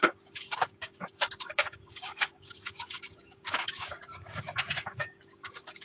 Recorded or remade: remade